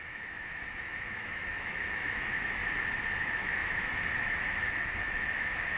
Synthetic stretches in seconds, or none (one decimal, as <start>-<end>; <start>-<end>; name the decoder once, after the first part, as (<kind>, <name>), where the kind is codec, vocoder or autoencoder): 0.0-2.6 (autoencoder, DAC-VAE); 3.2-5.8